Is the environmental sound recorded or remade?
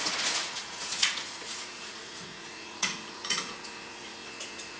remade